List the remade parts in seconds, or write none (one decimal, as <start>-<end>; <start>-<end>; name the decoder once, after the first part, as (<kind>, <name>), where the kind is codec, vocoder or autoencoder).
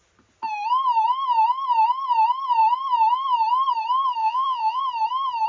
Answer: 4.2-4.8 (vocoder, BigVGAN v2)